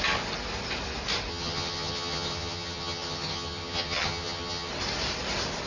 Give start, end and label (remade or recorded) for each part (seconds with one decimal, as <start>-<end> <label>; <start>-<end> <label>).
0.0-1.3 recorded; 1.3-4.7 remade; 4.7-5.7 recorded